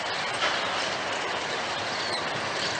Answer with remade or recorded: recorded